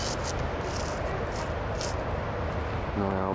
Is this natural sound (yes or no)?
yes